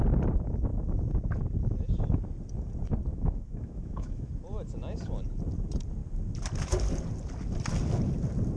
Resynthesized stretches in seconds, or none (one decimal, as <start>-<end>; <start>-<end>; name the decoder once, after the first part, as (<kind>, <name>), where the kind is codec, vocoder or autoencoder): 3.1-4.3 (autoencoder, DAC-VAE)